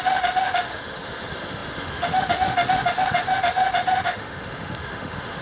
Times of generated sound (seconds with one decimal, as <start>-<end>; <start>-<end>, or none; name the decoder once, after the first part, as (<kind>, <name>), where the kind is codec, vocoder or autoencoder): 0.0-5.4 (autoencoder, DAC-VAE)